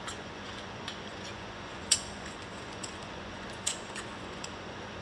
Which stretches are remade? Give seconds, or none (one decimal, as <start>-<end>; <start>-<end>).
0.0-5.0